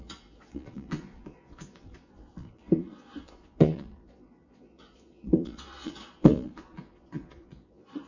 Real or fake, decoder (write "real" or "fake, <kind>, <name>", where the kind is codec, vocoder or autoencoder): fake, vocoder, Vocos